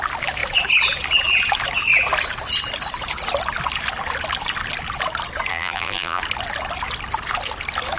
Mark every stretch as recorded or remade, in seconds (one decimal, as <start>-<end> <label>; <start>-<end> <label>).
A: 0.0-5.5 recorded; 5.5-6.2 remade; 6.2-8.0 recorded